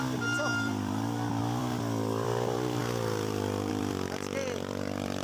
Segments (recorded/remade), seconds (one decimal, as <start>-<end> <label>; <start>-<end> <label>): 0.0-2.8 remade; 2.8-3.7 recorded; 3.7-5.2 remade